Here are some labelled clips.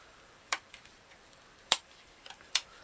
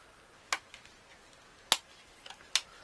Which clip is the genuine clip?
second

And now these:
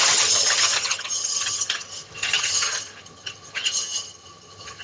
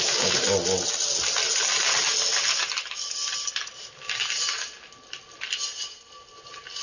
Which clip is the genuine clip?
second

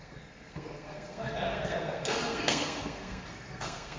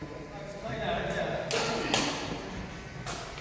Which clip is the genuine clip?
second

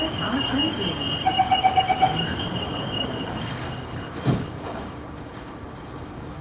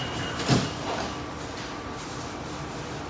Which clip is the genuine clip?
second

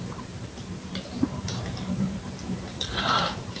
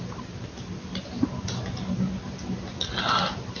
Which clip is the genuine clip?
second